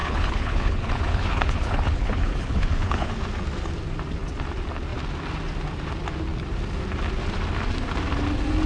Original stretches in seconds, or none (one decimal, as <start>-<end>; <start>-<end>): 3.1-8.7

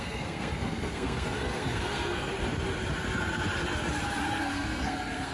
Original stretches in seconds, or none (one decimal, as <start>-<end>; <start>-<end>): 2.3-4.2

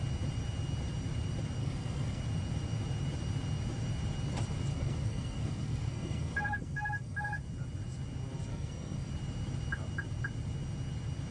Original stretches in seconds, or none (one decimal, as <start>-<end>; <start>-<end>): 0.0-1.6; 2.2-4.7; 7.4-8.5; 9.1-11.3

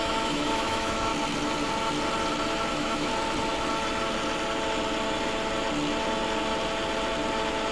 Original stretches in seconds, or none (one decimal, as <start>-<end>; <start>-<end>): 1.1-2.7; 3.1-7.7

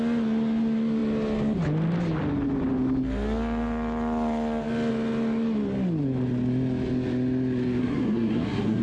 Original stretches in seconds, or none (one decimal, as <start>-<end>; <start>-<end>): 0.0-7.8

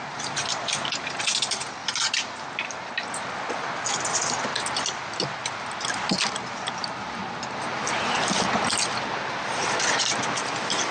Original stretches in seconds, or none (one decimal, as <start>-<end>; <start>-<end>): 0.0-10.9

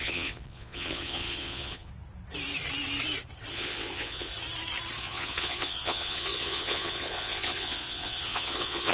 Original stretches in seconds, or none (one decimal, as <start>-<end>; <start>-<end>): 1.9-3.5; 4.3-5.0